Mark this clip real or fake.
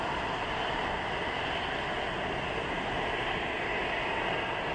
real